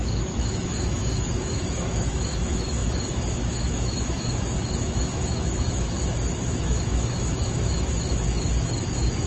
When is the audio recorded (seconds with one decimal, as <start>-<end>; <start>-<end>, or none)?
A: none